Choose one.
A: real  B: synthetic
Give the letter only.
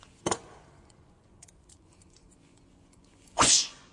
B